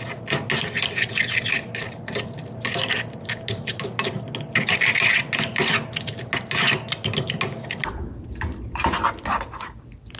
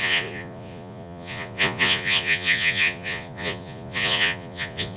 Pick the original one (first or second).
first